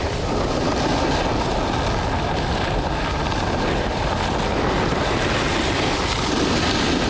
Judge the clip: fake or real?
real